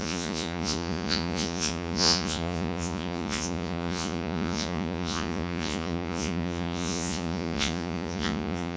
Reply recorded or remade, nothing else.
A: remade